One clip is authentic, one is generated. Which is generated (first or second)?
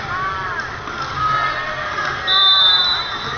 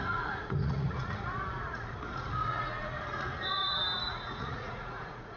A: second